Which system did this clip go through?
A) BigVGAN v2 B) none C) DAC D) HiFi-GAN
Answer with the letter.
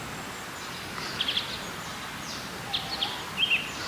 B